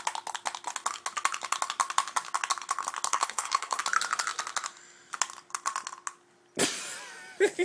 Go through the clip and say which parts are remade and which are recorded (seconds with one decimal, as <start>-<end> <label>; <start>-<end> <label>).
0.0-3.1 recorded; 3.1-3.8 remade; 3.8-7.6 recorded